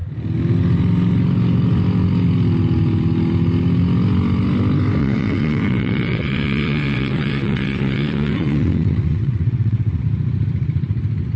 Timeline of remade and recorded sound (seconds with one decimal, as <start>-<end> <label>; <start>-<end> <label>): 0.0-5.0 recorded; 5.0-10.0 remade; 10.0-11.4 recorded